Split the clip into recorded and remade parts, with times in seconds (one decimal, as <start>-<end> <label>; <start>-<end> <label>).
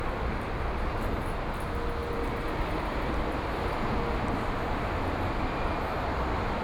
0.0-6.6 recorded